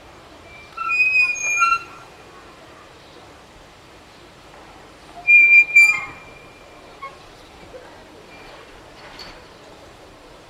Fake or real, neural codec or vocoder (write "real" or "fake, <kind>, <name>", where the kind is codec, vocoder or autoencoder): fake, vocoder, BigVGAN v2